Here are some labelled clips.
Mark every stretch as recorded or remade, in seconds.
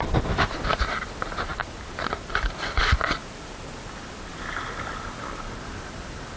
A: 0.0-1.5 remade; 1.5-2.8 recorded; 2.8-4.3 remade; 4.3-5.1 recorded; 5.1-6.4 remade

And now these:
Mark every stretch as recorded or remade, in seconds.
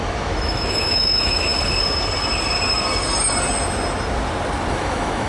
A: 0.0-1.5 remade; 1.5-4.7 recorded; 4.7-5.3 remade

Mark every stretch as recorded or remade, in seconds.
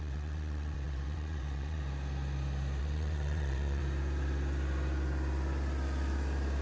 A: 0.0-1.8 remade; 1.8-2.8 recorded; 2.8-3.8 remade; 3.8-6.6 recorded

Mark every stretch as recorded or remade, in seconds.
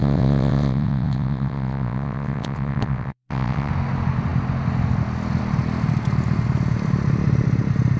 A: 0.0-3.7 remade; 3.7-8.0 recorded